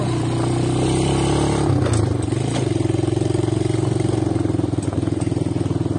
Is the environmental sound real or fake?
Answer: real